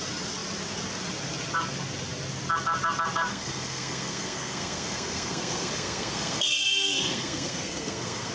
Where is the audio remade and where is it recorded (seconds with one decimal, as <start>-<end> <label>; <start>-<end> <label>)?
0.0-3.3 recorded; 3.3-8.3 remade